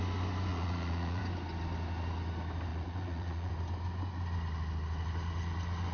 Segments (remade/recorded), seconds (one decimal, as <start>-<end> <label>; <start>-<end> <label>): 0.0-0.5 recorded; 0.5-1.2 remade; 1.2-2.7 recorded; 2.7-3.5 remade; 3.5-5.9 recorded